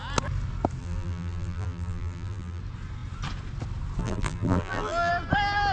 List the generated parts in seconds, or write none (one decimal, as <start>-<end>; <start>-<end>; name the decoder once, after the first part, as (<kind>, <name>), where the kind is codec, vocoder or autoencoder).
0.8-2.6 (vocoder, BigVGAN v2); 4.0-5.1